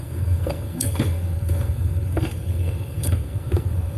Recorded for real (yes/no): no